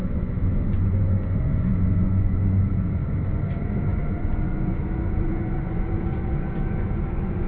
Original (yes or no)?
no